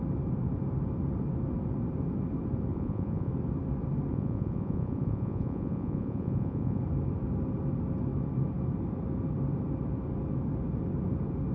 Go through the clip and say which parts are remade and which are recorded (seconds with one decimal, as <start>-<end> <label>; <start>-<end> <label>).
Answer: 0.0-2.7 recorded; 2.7-3.3 remade; 3.3-4.1 recorded; 4.1-6.8 remade; 6.8-11.5 recorded